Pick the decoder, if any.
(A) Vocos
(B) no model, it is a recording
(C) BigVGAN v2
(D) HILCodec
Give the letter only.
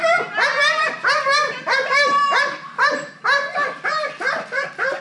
B